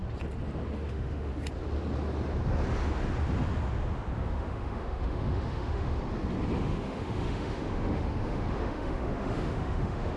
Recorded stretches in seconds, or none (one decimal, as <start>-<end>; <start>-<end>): 0.0-0.9; 1.3-4.2; 6.0-6.6